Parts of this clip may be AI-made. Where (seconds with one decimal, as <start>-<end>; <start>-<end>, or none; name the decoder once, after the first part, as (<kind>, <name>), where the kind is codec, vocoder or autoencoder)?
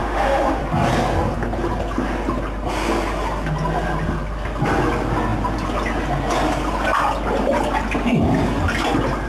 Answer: 0.0-0.6 (autoencoder, DAC-VAE)